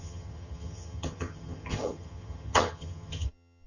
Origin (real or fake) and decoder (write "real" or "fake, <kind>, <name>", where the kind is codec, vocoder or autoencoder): fake, vocoder, HiFi-GAN